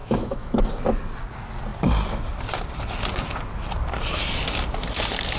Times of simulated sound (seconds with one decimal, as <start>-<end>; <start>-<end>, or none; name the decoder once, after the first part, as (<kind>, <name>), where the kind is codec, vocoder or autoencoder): 0.0-0.6 (autoencoder, DAC-VAE)